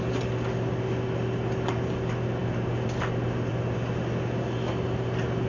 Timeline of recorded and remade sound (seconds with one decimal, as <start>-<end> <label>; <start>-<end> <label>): 0.0-5.5 recorded